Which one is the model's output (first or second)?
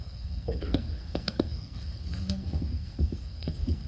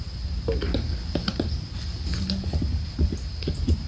first